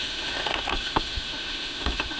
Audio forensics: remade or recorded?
remade